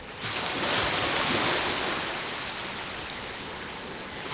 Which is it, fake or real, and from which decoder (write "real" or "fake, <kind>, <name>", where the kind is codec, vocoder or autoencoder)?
real